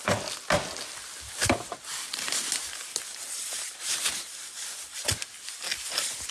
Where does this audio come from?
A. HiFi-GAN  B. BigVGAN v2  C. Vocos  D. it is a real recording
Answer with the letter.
D